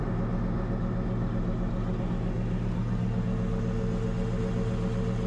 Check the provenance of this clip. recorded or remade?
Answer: recorded